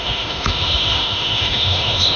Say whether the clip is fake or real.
fake